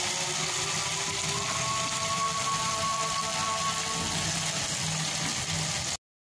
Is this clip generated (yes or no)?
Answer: no